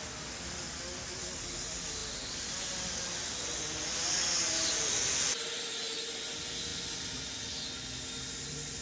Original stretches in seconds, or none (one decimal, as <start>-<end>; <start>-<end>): 0.0-8.8